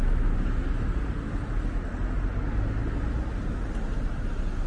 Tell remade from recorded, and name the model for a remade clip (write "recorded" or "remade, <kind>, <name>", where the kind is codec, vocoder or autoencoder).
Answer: recorded